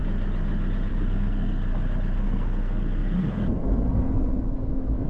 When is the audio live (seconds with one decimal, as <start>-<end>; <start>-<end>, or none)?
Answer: 0.0-0.9; 1.7-2.2